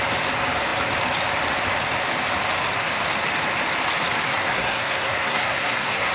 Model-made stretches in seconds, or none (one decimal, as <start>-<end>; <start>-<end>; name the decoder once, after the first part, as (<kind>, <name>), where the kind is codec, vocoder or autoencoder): 4.3-6.1 (codec, SNAC)